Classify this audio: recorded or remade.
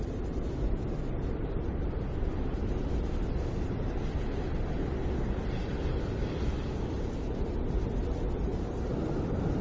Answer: recorded